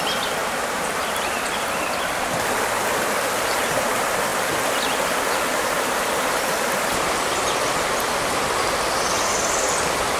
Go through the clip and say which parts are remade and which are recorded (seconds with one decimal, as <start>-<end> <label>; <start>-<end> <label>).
0.0-0.4 recorded; 0.4-1.4 remade; 1.4-4.3 recorded; 4.3-7.1 remade; 7.1-10.2 recorded